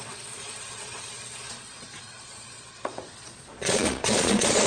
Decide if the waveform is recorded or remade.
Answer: remade